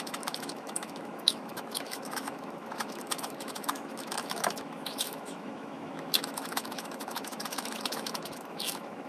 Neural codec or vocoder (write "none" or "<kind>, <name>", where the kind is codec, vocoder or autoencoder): autoencoder, DAC-VAE